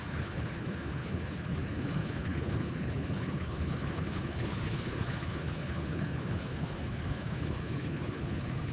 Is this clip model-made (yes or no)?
yes